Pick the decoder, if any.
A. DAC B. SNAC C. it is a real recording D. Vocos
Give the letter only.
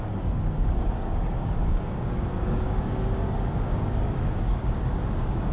A